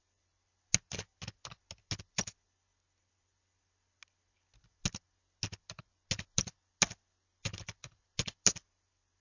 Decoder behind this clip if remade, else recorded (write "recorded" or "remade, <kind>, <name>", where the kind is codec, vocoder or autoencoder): recorded